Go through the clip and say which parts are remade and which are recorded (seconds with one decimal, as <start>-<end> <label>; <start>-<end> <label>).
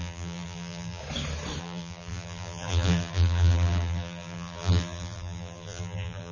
0.0-1.0 remade; 1.0-1.6 recorded; 1.6-6.3 remade